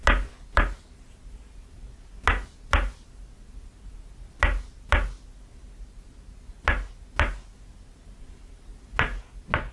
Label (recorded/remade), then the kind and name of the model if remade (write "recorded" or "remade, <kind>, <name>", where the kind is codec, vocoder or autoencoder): recorded